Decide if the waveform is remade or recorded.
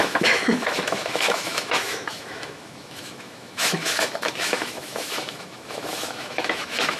remade